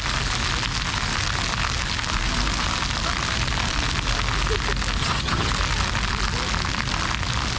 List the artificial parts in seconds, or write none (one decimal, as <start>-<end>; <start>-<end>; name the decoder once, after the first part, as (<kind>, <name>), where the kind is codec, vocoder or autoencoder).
5.0-5.5 (vocoder, HiFi-GAN)